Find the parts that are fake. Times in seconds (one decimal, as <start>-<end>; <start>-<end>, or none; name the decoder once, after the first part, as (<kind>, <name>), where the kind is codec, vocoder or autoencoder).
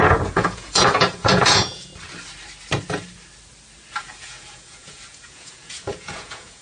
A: 0.0-1.9 (vocoder, Vocos); 4.0-6.6